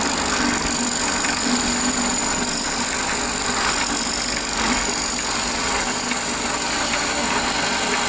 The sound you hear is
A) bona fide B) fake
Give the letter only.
A